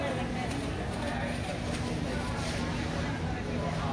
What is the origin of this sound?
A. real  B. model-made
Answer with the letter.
A